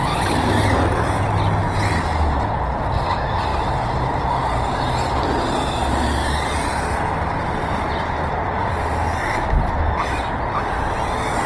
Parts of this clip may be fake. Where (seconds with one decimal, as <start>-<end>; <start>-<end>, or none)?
3.5-4.3